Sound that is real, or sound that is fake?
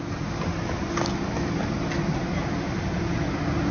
real